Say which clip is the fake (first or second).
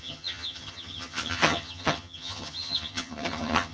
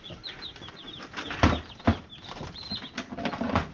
first